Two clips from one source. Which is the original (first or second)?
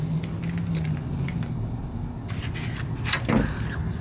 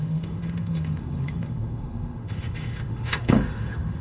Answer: first